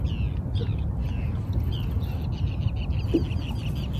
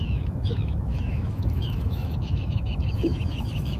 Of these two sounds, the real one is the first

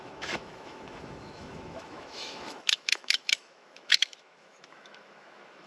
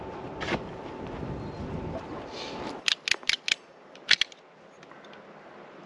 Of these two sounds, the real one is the second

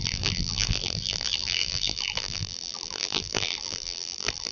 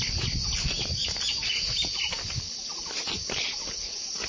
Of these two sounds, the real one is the second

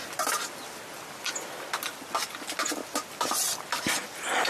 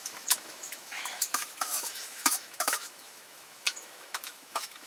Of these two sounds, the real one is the first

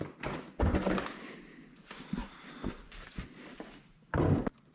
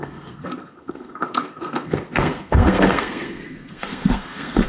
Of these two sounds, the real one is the first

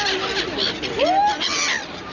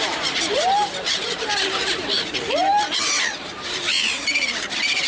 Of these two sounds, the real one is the first